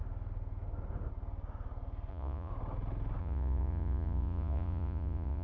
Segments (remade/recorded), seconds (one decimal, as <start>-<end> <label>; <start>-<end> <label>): 0.0-2.1 recorded; 2.1-2.5 remade; 2.5-3.2 recorded; 3.2-5.4 remade